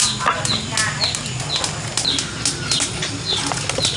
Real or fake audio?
real